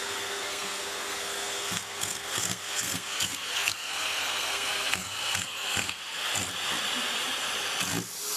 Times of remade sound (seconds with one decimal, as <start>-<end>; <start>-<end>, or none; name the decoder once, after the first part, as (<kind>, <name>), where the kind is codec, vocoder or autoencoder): 0.0-6.3 (codec, SNAC)